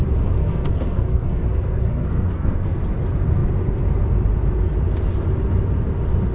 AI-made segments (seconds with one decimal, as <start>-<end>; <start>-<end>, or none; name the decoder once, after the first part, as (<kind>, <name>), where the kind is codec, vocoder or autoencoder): 0.4-2.8 (codec, SNAC)